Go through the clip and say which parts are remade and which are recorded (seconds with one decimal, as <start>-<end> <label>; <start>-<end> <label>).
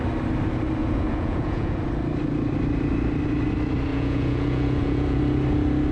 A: 0.0-0.8 recorded; 0.8-1.8 remade; 1.8-3.9 recorded; 3.9-5.2 remade; 5.2-5.9 recorded